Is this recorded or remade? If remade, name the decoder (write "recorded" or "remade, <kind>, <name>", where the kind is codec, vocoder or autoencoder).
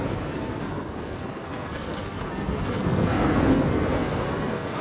remade, codec, SNAC